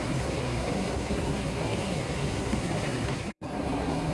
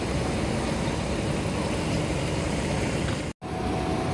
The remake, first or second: first